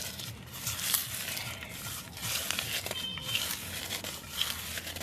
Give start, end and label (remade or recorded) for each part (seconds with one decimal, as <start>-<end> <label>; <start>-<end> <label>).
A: 0.0-5.0 recorded